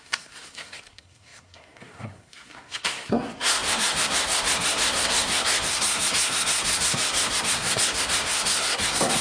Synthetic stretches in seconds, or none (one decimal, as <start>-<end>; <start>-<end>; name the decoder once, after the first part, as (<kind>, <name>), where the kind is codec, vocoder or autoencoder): 0.0-9.2 (codec, SNAC)

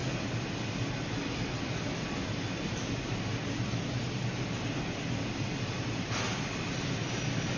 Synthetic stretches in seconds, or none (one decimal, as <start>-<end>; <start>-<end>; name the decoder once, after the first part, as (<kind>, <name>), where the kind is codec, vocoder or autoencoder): none

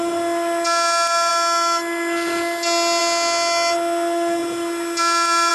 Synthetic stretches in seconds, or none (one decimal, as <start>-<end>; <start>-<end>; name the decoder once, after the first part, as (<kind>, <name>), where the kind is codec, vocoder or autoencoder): none

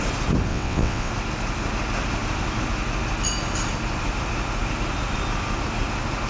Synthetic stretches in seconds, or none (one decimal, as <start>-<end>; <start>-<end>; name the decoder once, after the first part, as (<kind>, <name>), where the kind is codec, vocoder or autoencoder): 0.5-1.1 (vocoder, WaveNeXt)